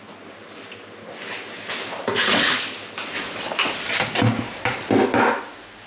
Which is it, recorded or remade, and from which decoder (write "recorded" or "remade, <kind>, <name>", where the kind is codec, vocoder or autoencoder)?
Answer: recorded